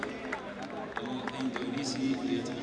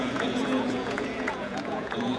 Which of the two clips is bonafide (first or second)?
first